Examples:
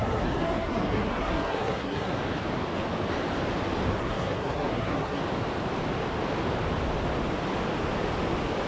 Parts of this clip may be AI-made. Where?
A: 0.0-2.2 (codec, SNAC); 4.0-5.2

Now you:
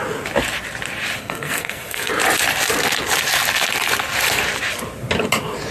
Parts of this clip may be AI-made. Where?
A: 1.2-2.1 (codec, SNAC)

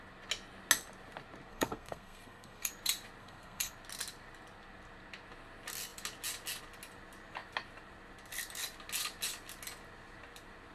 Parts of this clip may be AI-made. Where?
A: 1.5-2.7 (codec, SNAC); 3.2-3.7

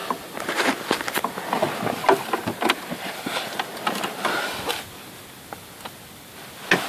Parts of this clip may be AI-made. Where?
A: none

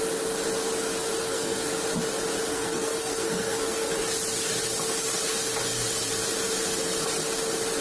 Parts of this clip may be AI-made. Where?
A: 1.2-1.7 (codec, SNAC); 2.5-3.9

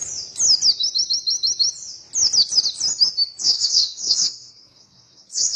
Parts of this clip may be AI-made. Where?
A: 3.4-5.6 (codec, SNAC)

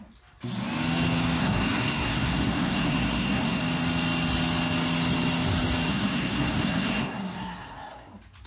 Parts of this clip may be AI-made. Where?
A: 1.4-3.6 (codec, SNAC); 5.9-8.1

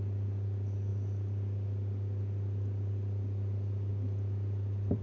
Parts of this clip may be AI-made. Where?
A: none